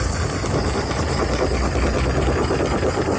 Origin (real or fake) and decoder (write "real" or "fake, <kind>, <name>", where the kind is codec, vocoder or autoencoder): fake, vocoder, BigVGAN v2